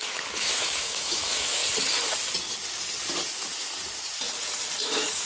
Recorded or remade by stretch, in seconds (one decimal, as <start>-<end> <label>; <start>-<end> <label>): 0.0-1.6 remade; 1.6-4.8 recorded; 4.8-5.3 remade